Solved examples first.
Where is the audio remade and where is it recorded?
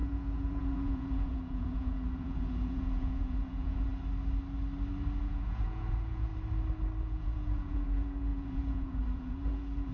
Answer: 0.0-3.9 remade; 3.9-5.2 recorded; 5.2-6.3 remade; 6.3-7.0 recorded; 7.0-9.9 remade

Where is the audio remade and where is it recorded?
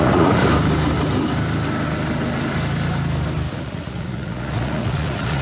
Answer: 0.0-0.4 remade; 0.4-3.5 recorded; 3.5-5.4 remade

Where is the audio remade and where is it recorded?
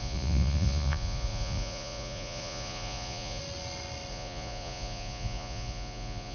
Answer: 0.0-3.4 remade; 3.4-4.1 recorded; 4.1-6.3 remade